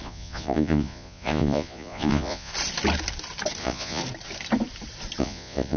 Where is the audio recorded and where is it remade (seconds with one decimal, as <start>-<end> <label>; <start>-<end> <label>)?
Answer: 0.0-2.5 remade; 2.5-3.6 recorded; 3.6-4.0 remade; 4.0-5.2 recorded; 5.2-5.8 remade